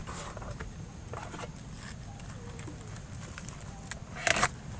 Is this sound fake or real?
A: real